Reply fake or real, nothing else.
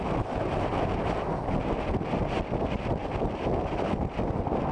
real